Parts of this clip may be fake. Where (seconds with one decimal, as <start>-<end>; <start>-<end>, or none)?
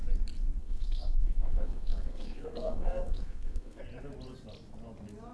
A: 0.6-3.8